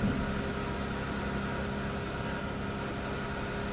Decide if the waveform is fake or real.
real